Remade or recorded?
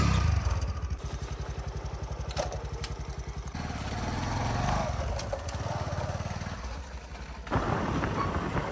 recorded